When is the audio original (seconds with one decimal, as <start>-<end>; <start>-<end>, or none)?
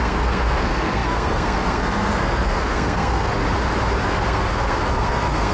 3.4-4.0